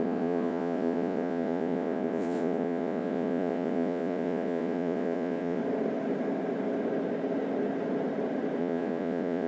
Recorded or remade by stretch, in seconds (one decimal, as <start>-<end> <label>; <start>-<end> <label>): 0.0-5.6 remade; 5.6-8.6 recorded; 8.6-9.5 remade